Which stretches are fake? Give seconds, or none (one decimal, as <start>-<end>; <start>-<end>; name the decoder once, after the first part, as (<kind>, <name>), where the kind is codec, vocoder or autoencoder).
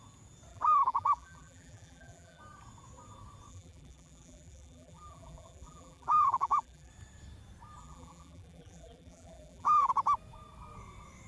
0.5-2.4 (vocoder, BigVGAN v2); 3.5-6.9; 7.8-9.9